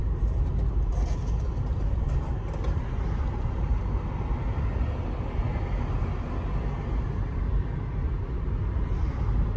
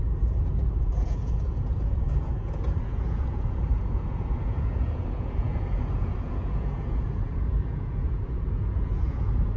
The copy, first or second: second